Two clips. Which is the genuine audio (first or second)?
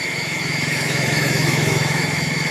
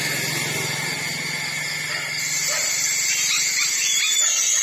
second